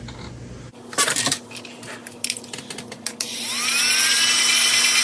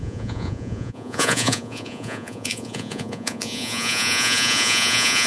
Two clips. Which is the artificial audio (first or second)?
second